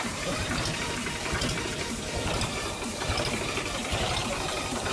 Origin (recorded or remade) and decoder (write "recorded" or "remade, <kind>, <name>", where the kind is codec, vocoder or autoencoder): remade, vocoder, BigVGAN v2